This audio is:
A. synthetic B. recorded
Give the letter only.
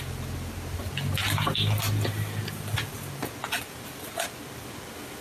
B